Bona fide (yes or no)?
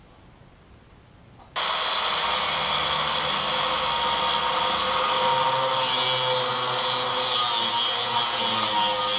yes